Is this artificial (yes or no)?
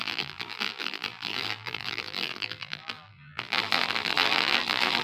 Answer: yes